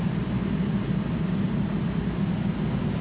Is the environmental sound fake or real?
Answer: real